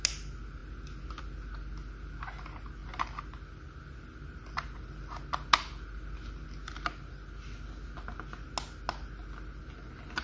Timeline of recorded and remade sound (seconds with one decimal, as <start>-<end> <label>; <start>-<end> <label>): 0.0-10.2 recorded